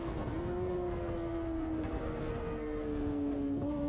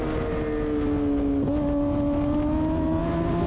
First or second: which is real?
second